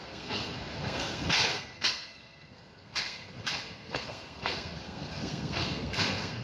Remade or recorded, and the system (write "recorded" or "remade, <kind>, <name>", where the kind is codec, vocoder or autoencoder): remade, codec, SNAC